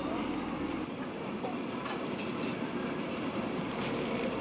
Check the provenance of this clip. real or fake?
real